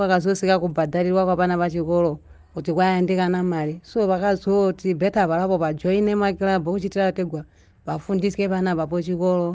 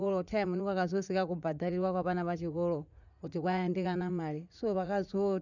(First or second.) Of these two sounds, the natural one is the first